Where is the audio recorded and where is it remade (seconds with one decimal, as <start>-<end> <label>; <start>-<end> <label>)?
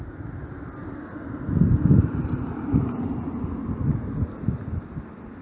0.0-5.4 recorded